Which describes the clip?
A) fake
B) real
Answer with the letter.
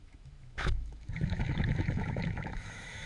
A